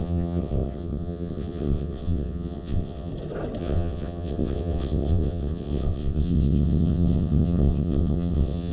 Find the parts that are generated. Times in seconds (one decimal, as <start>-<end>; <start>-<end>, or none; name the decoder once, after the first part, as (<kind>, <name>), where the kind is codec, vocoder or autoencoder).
0.0-3.1 (vocoder, WaveNeXt); 3.6-8.7